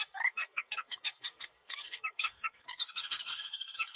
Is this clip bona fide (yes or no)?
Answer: no